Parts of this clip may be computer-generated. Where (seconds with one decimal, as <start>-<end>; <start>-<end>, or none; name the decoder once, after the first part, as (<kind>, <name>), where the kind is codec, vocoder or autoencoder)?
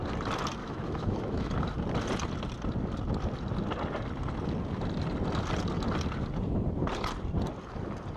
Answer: 0.6-1.5 (autoencoder, DAC-VAE)